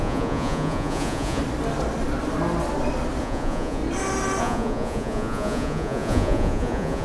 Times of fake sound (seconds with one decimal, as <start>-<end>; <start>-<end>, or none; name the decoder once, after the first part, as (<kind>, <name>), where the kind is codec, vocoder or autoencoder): 0.0-1.4 (vocoder, Vocos); 3.2-3.8; 4.4-7.0

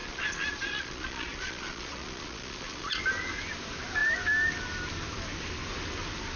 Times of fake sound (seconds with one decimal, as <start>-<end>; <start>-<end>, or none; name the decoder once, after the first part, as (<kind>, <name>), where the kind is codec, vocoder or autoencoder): 0.0-3.0 (vocoder, Vocos)

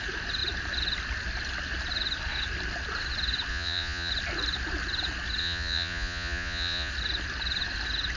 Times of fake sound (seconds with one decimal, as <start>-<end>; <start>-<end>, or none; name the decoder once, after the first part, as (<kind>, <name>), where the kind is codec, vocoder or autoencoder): 3.5-4.1 (vocoder, Vocos); 5.4-6.9

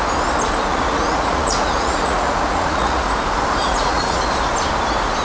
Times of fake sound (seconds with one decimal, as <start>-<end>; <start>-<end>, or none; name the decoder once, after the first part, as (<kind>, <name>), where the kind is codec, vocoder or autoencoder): 0.7-3.1 (vocoder, Vocos); 3.6-4.2

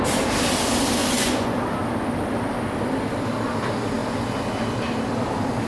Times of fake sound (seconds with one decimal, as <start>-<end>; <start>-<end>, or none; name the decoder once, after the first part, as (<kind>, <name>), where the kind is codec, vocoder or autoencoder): 1.0-1.6 (vocoder, Vocos)

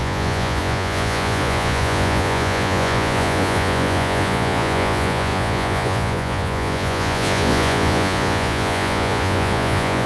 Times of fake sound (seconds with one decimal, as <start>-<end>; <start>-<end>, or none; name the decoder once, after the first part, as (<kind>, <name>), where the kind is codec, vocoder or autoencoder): 0.0-10.1 (vocoder, Vocos)

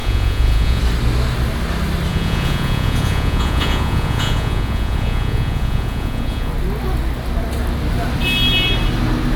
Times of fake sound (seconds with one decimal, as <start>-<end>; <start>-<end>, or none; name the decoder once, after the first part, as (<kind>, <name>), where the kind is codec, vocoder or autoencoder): 0.0-0.8 (vocoder, Vocos); 2.1-6.5